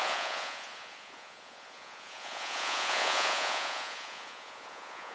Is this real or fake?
fake